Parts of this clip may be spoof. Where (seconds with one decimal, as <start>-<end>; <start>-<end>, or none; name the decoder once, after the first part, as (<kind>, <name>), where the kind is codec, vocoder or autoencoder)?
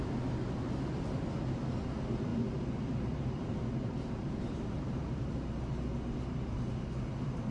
2.3-5.3 (vocoder, BigVGAN v2)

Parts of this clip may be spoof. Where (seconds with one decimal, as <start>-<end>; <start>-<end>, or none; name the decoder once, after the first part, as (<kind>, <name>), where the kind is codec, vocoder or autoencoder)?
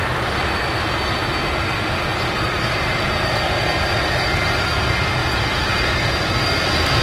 5.2-6.2 (vocoder, Vocos)